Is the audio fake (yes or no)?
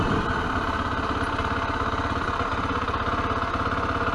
no